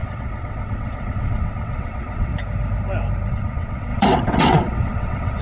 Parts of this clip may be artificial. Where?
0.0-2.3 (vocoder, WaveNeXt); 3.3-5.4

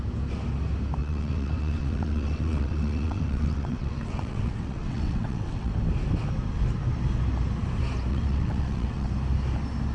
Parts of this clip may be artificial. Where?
1.0-5.7 (vocoder, WaveNeXt); 8.1-9.1

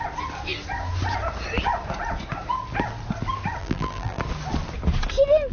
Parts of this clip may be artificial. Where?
3.6-4.2 (vocoder, BigVGAN v2)

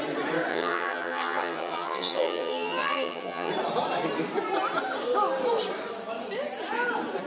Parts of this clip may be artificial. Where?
0.5-3.5 (vocoder, HiFi-GAN)

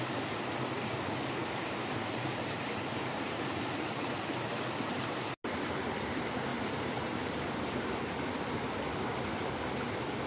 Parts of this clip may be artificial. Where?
1.4-4.1 (vocoder, BigVGAN v2); 6.5-7.5